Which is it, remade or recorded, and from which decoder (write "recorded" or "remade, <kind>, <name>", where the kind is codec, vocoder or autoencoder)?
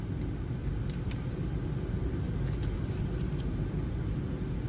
recorded